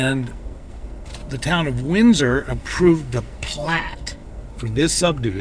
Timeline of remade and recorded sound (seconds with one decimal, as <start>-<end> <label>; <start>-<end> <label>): 0.0-1.1 remade; 1.1-2.2 recorded; 2.2-5.4 remade